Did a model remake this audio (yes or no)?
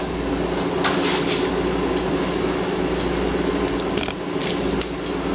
no